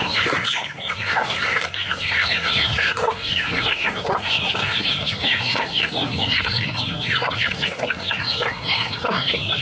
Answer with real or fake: fake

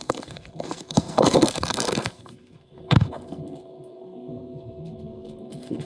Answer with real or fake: fake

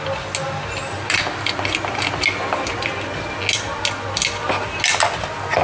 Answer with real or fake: real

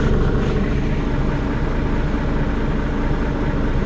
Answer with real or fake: real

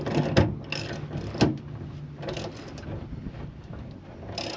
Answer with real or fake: real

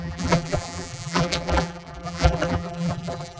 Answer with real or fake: fake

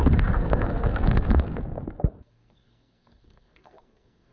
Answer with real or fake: fake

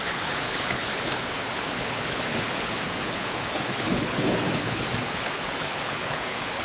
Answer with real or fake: fake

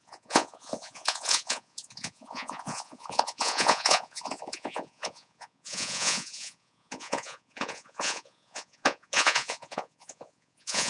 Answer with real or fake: fake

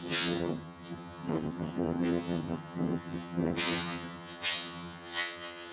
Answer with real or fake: fake